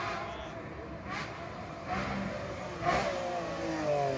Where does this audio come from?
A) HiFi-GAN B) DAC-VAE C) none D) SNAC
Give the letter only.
C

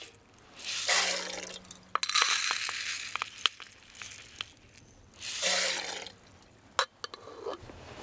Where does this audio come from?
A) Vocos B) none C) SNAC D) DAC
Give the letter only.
B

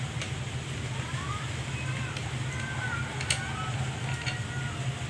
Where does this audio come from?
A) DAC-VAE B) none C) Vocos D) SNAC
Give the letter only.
B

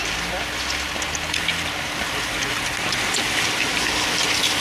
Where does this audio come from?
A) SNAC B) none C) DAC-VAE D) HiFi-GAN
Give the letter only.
B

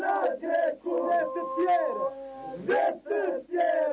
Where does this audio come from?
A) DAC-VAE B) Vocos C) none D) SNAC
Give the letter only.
C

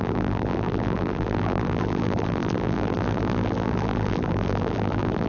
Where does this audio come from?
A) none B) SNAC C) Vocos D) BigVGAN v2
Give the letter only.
D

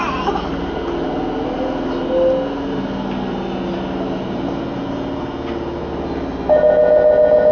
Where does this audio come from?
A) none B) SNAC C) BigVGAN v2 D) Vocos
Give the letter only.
A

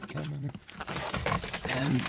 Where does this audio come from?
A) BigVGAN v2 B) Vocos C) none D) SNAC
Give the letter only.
A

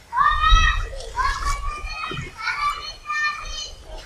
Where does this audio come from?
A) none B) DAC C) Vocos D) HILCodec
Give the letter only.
A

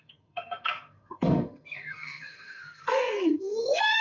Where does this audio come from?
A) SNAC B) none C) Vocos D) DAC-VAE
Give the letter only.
A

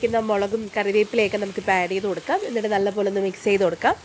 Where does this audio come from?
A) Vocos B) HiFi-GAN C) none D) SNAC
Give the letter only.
C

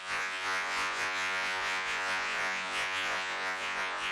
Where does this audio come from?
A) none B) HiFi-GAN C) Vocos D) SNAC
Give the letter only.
C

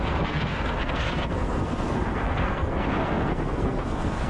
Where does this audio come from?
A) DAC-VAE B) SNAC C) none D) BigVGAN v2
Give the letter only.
B